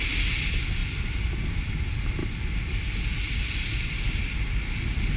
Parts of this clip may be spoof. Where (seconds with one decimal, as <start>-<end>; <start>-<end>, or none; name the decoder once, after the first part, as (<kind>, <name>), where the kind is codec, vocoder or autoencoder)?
none